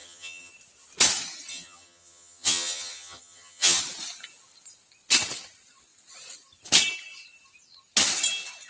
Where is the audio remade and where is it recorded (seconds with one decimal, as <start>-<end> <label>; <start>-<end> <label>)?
0.0-0.5 remade; 0.5-1.5 recorded; 1.5-3.8 remade; 3.8-8.7 recorded